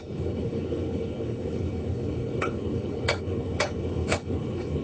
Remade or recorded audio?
remade